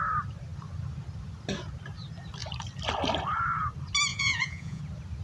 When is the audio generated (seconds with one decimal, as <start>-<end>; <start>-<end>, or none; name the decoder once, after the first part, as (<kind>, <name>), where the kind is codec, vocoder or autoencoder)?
4.1-4.8 (vocoder, Vocos)

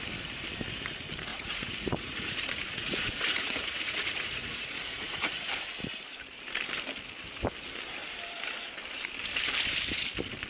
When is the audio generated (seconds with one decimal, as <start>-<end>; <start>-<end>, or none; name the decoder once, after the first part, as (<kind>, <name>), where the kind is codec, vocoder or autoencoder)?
1.3-5.5 (vocoder, Vocos)

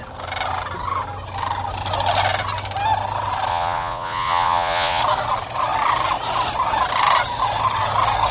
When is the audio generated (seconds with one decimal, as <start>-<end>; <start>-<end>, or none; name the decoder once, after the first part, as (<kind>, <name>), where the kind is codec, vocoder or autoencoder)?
3.5-5.0 (vocoder, Vocos)